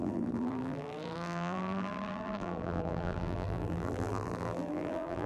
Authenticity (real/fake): fake